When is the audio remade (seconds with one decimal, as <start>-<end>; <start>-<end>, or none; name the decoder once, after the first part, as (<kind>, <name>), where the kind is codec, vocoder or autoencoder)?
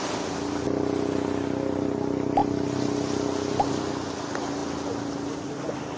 none